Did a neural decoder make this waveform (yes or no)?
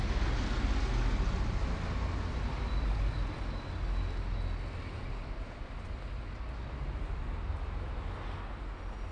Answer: no